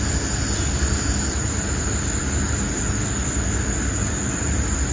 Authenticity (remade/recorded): recorded